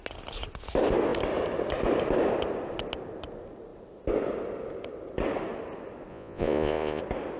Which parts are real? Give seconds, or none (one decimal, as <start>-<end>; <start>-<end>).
0.0-6.1; 7.0-7.4